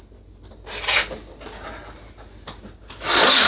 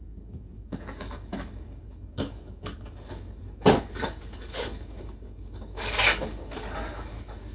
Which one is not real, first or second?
second